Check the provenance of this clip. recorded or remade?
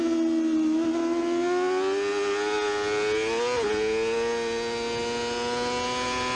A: recorded